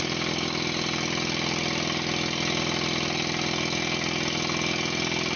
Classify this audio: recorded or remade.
recorded